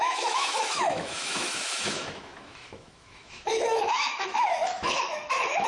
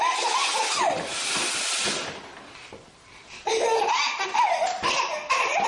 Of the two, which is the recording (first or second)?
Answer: second